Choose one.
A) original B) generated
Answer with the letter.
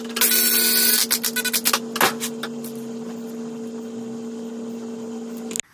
A